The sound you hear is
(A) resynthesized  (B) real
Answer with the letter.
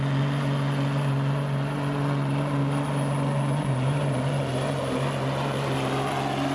B